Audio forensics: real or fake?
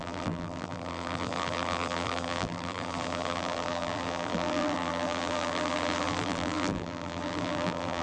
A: fake